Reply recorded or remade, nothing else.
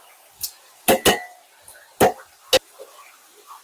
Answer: recorded